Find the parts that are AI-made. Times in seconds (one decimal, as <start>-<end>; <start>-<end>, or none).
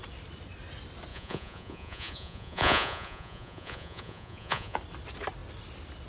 1.1-4.8